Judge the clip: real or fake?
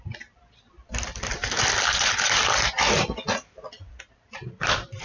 fake